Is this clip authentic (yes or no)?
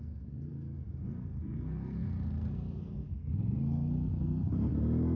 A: no